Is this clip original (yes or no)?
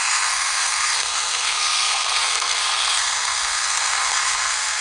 no